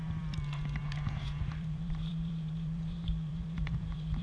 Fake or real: fake